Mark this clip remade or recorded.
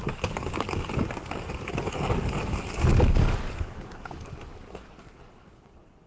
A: remade